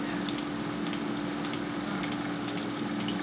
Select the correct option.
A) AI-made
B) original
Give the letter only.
B